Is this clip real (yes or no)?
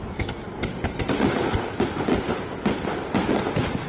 yes